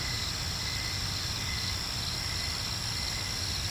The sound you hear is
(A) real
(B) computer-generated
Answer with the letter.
A